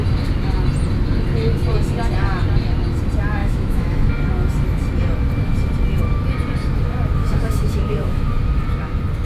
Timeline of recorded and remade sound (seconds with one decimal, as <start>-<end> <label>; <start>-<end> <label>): 0.0-3.4 recorded; 3.4-4.1 remade; 4.1-7.2 recorded; 7.2-8.2 remade; 8.2-9.3 recorded